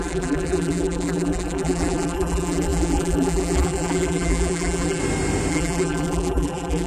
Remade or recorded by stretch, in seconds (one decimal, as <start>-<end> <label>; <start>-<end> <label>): 0.0-5.0 remade; 5.0-5.5 recorded; 5.5-6.9 remade